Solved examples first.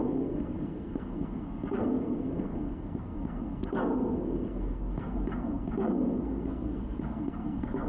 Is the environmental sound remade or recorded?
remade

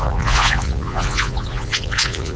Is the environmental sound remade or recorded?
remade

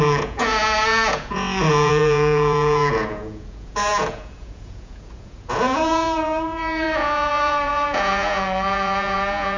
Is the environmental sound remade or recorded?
remade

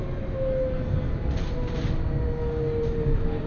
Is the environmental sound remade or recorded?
recorded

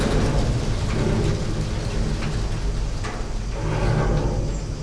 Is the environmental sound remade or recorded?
recorded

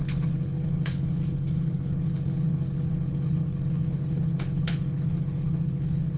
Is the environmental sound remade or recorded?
remade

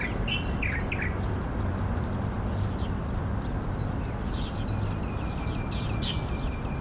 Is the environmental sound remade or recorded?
recorded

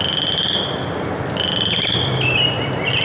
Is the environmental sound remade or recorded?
remade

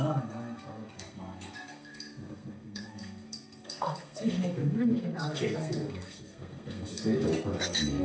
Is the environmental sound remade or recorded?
remade